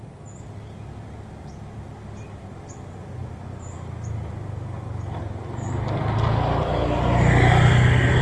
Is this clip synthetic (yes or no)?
no